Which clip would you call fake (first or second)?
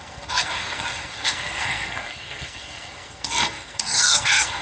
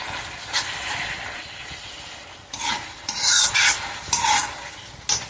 first